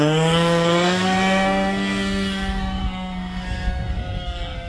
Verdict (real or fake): fake